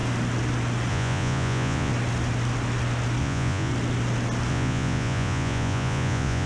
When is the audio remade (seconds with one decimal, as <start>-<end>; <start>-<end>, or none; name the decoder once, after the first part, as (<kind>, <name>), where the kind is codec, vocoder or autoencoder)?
0.9-1.9 (vocoder, Vocos); 3.2-3.7; 4.5-6.5